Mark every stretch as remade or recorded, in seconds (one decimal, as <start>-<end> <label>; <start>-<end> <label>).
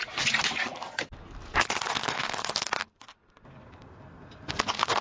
0.0-5.0 recorded